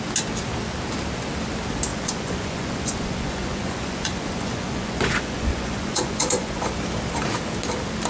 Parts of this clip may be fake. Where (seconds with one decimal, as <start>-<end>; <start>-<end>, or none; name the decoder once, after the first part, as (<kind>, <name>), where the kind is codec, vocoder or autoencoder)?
1.9-6.7 (vocoder, Vocos)